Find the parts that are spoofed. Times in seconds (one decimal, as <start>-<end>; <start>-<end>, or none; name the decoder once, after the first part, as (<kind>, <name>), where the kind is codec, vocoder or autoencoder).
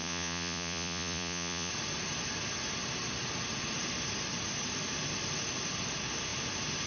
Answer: 0.0-1.7 (vocoder, Vocos)